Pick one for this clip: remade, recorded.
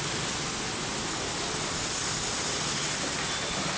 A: recorded